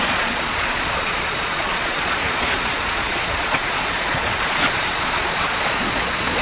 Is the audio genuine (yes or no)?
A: no